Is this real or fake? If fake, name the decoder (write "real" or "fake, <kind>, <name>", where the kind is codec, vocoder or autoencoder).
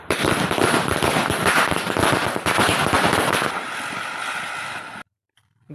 fake, vocoder, BigVGAN v2